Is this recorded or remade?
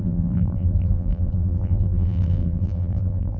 remade